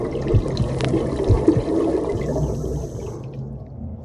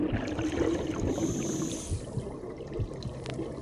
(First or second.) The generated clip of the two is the second